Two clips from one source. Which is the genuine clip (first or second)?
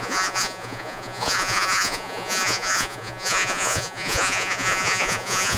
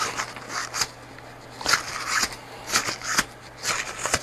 second